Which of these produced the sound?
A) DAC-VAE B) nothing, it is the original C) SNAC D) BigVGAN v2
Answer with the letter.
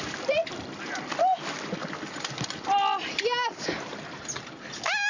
B